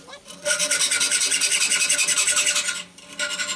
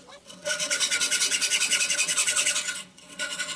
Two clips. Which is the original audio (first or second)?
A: first